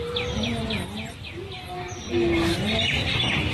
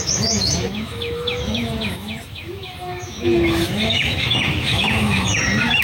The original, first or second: first